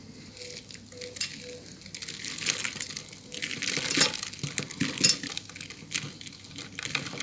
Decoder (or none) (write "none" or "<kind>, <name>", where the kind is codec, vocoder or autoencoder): none